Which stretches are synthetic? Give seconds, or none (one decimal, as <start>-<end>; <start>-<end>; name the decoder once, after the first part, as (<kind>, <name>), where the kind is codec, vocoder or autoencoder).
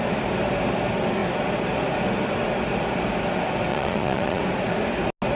3.7-4.4 (vocoder, Vocos)